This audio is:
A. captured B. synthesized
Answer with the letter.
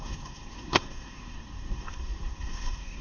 B